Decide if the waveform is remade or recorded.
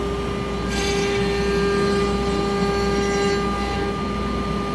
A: recorded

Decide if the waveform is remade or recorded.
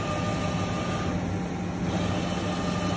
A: recorded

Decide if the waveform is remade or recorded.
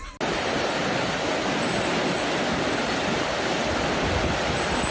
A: recorded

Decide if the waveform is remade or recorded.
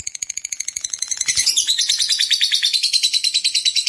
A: remade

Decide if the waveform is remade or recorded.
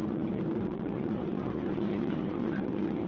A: remade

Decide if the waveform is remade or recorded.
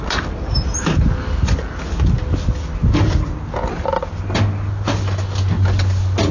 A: recorded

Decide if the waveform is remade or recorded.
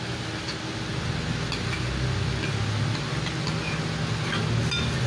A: recorded